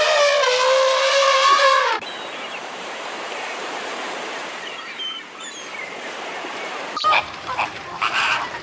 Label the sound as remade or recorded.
remade